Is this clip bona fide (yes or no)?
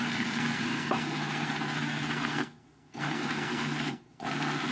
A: no